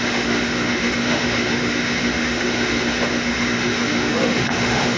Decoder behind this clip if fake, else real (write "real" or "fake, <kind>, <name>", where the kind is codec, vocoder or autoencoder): fake, autoencoder, DAC-VAE